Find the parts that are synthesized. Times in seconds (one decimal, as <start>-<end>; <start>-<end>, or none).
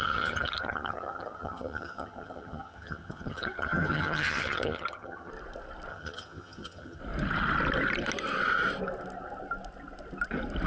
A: 0.0-5.3; 5.9-7.0